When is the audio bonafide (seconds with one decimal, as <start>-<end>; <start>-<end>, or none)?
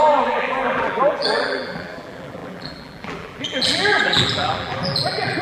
none